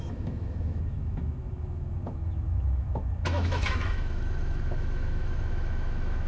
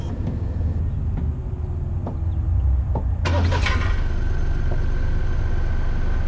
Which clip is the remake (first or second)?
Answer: first